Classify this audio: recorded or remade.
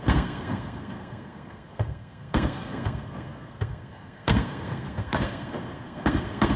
remade